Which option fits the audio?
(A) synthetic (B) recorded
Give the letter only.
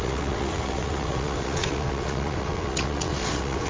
A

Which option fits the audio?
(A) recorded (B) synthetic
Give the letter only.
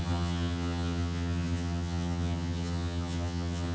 B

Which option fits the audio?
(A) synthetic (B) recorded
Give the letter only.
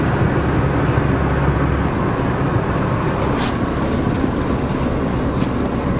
B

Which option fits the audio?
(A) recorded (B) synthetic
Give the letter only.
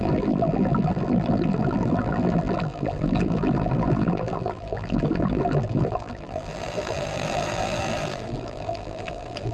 B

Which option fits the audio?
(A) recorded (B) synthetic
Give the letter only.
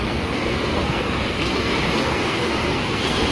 B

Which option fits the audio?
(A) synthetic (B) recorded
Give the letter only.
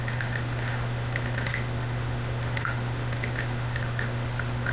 A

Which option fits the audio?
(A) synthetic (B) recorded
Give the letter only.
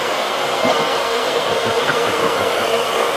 A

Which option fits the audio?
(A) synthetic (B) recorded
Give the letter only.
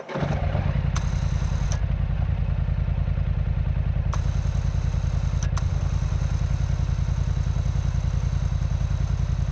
B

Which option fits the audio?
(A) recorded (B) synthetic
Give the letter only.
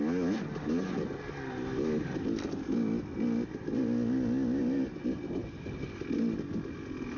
A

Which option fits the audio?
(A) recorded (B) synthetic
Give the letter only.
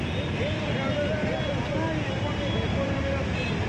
A